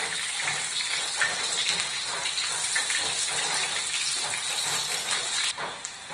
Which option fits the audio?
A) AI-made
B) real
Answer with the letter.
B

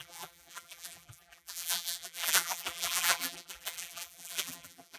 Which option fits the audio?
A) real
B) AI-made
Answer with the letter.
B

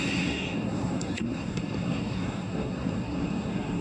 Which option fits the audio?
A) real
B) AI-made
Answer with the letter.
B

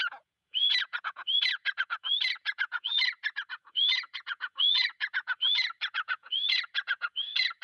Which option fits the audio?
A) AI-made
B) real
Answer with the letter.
A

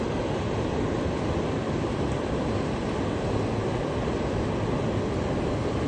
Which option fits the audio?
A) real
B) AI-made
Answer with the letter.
A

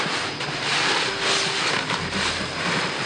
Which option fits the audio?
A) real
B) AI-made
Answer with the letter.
A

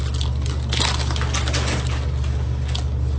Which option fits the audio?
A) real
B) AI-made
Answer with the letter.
A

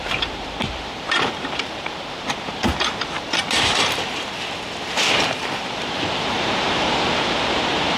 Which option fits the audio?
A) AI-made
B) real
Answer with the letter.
A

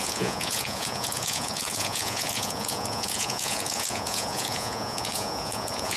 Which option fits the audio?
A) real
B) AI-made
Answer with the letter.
B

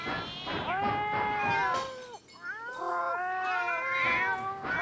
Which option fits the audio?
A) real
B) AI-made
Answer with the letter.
A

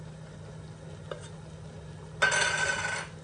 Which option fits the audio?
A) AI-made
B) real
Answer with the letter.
B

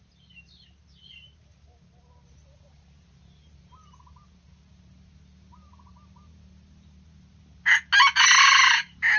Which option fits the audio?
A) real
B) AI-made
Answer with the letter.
A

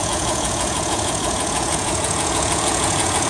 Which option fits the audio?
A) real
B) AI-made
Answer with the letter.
B